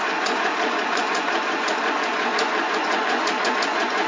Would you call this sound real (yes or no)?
no